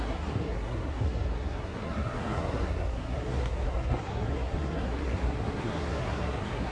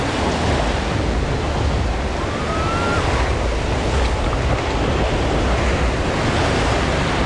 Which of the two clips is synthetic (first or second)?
first